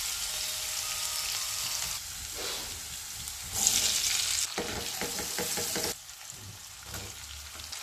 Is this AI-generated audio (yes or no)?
no